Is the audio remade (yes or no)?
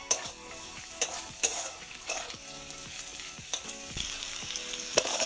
yes